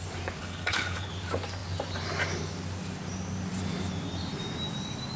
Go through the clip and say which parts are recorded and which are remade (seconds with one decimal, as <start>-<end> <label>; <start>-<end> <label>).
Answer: 0.0-0.4 recorded; 0.4-1.1 remade; 1.1-5.2 recorded